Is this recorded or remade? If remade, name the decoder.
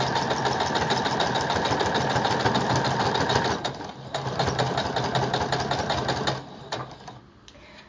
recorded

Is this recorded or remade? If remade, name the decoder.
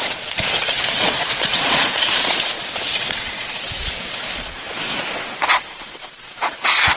remade, vocoder, Vocos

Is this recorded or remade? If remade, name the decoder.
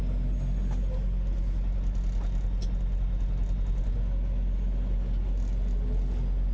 recorded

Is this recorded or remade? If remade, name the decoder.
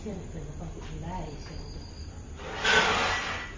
recorded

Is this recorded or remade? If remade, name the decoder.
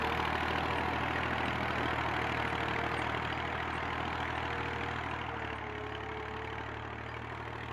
recorded